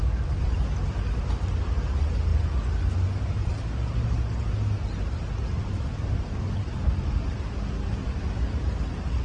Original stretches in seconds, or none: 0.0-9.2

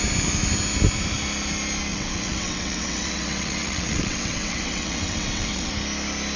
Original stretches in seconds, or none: 0.0-1.9; 5.7-6.4

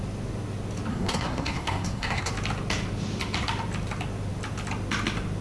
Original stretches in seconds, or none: 0.0-0.9; 2.3-5.4

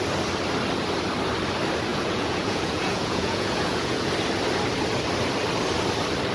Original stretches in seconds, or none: 0.0-1.9; 4.1-6.3

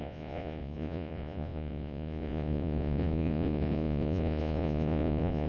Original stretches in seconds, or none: none

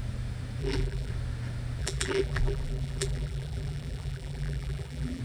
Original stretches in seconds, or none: 0.0-0.6; 1.1-1.8

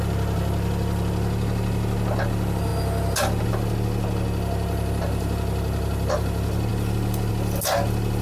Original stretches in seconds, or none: 0.0-8.2

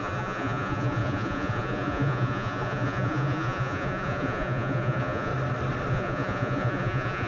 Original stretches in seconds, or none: 5.3-5.9